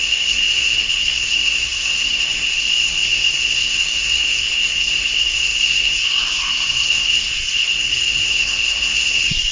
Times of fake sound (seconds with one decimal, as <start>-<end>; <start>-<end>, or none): 0.0-9.5